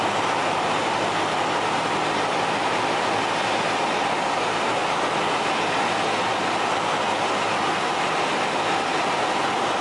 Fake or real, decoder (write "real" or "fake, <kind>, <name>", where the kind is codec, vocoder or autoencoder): real